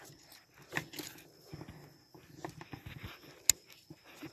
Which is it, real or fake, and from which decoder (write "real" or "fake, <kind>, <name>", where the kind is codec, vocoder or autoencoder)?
real